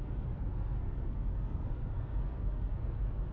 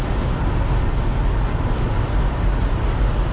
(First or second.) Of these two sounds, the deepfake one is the first